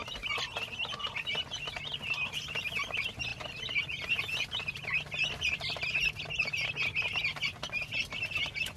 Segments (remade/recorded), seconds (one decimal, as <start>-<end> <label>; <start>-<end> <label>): 0.0-8.8 recorded